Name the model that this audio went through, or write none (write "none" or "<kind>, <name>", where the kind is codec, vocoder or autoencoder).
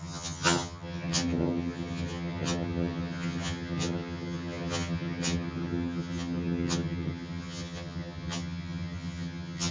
vocoder, HiFi-GAN